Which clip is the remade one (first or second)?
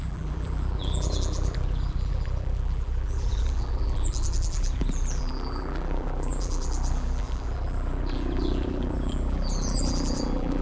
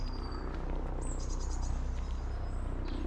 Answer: first